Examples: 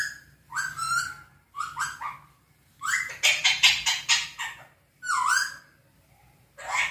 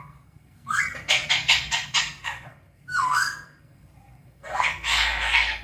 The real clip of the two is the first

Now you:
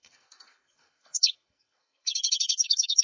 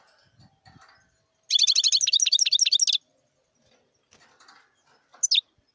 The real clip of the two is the second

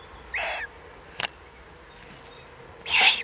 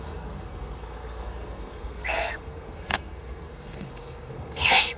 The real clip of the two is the first